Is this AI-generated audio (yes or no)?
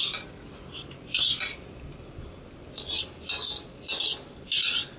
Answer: no